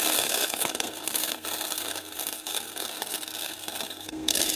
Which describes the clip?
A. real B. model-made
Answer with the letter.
B